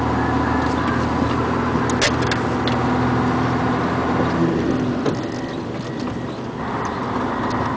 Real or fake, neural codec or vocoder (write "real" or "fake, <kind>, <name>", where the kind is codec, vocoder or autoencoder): real